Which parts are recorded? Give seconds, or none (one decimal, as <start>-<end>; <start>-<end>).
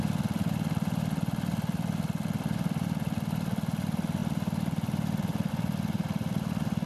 0.0-6.9